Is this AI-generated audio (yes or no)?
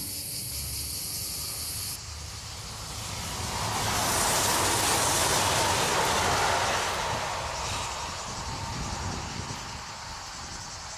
no